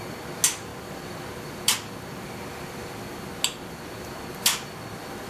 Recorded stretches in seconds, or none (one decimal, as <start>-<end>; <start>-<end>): 0.0-5.3